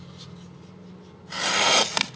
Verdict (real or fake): real